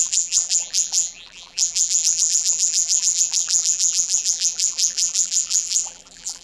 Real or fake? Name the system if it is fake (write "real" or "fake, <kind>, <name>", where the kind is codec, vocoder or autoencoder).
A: fake, vocoder, BigVGAN v2